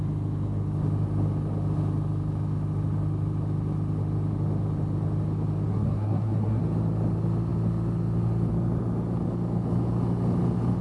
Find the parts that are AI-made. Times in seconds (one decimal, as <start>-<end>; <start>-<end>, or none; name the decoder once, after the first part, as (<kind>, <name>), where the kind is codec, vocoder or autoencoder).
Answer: 5.7-6.6 (codec, SNAC)